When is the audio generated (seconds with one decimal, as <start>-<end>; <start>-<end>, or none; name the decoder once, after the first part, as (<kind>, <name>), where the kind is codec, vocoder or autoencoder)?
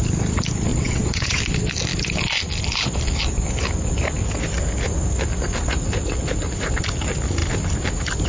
0.7-1.4 (vocoder, WaveNeXt)